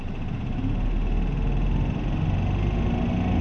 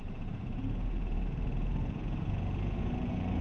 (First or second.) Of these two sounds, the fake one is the second